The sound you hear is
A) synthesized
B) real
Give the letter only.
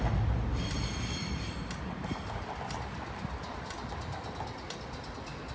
B